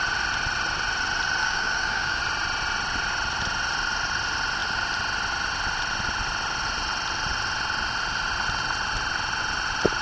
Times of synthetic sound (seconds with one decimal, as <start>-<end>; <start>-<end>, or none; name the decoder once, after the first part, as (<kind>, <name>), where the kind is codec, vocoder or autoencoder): 1.4-2.2 (codec, DAC)